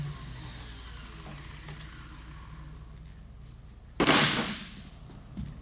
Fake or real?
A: real